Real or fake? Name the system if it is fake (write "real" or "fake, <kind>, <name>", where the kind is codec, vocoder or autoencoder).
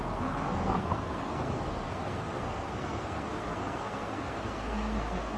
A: fake, codec, SNAC